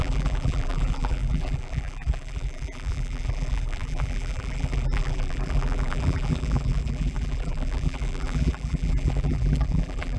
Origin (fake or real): fake